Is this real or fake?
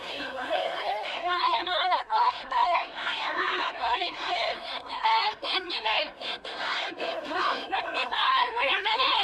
fake